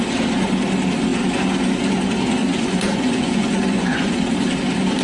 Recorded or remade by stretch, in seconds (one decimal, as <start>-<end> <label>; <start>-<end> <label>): 0.0-2.4 recorded; 2.4-4.2 remade; 4.2-5.0 recorded